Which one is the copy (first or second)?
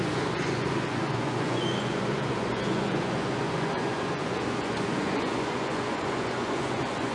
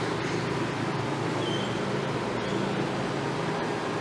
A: first